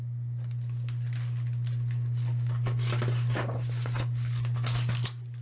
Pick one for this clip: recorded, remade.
recorded